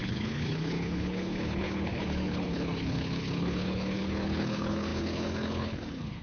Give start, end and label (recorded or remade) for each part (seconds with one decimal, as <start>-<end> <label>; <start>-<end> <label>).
0.0-6.2 remade